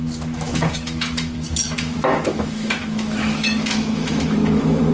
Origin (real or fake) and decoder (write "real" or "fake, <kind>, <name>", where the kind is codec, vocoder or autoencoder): fake, autoencoder, DAC-VAE